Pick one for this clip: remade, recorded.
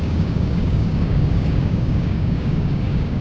remade